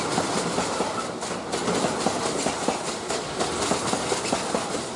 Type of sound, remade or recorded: recorded